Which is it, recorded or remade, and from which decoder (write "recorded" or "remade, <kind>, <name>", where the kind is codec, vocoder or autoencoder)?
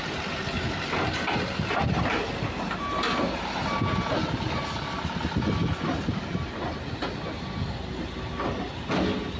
recorded